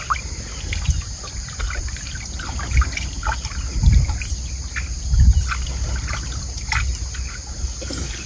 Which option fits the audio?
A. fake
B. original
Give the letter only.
B